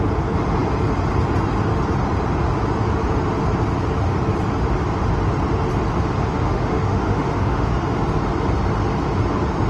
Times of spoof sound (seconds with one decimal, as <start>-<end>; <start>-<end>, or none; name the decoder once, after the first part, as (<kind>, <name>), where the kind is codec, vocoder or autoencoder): 6.3-7.7 (autoencoder, DAC-VAE)